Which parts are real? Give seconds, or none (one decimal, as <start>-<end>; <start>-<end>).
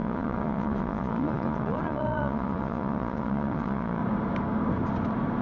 4.0-5.4